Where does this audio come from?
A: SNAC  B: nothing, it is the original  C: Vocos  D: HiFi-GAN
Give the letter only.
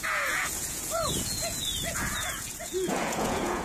C